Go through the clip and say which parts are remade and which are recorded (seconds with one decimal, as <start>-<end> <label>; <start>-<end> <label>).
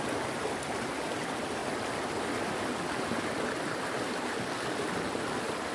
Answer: 0.0-5.7 recorded